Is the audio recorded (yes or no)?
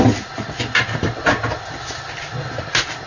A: yes